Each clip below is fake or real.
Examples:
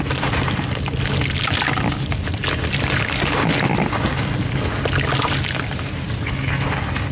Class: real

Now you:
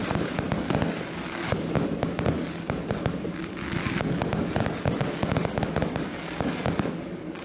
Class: fake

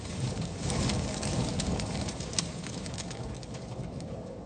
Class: fake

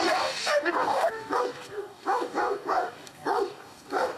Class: fake